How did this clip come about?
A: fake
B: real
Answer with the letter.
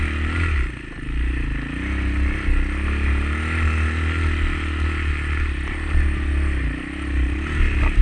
B